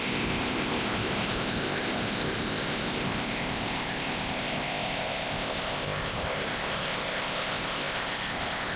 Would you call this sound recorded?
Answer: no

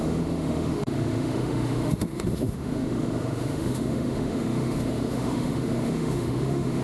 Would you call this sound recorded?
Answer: no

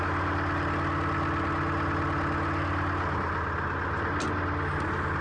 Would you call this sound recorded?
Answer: yes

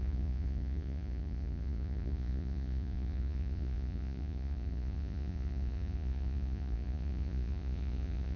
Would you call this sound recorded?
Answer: no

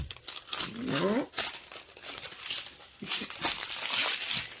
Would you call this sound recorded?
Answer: yes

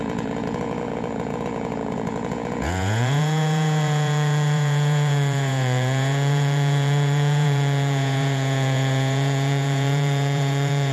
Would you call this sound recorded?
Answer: no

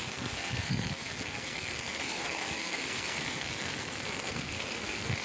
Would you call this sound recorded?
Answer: no